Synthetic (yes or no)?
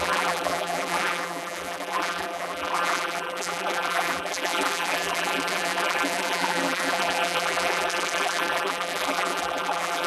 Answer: yes